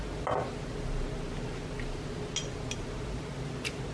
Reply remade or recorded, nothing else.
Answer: recorded